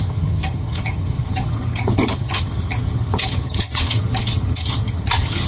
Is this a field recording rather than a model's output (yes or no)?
no